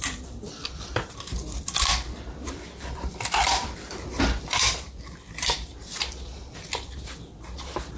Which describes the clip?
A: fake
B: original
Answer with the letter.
B